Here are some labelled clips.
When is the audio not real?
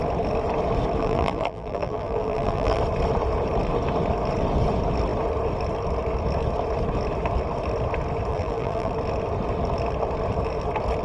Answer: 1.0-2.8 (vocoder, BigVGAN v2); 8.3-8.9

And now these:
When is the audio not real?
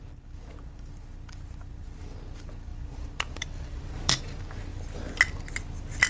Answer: 2.7-4.2 (vocoder, BigVGAN v2)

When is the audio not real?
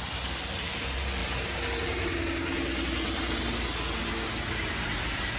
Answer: none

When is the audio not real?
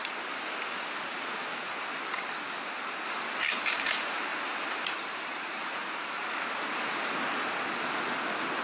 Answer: 4.3-6.1 (vocoder, BigVGAN v2)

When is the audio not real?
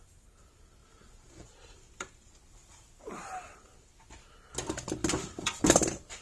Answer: 0.8-3.9 (vocoder, BigVGAN v2); 5.0-6.2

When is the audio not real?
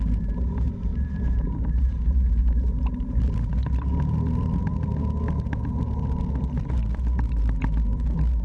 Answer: 0.0-3.5 (vocoder, BigVGAN v2); 6.6-8.4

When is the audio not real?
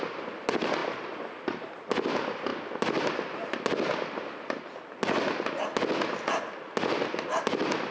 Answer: none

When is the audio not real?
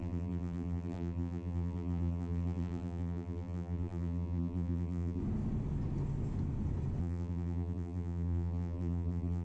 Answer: 0.0-5.2 (vocoder, BigVGAN v2); 7.0-9.4